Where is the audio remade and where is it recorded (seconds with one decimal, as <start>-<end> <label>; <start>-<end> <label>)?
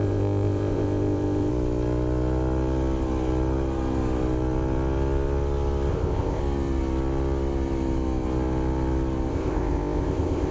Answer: 0.0-1.5 remade; 1.5-5.9 recorded; 5.9-6.4 remade; 6.4-9.3 recorded; 9.3-10.5 remade